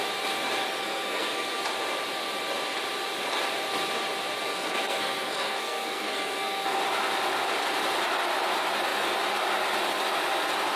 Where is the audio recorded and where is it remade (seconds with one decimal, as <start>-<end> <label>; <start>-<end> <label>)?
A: 0.0-0.8 recorded; 0.8-1.6 remade; 1.6-4.5 recorded; 4.5-6.8 remade; 6.8-10.8 recorded